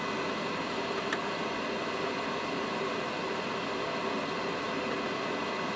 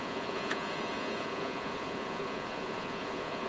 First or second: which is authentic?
first